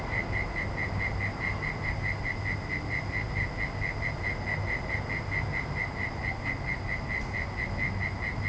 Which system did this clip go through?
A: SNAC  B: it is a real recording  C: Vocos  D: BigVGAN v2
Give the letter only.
B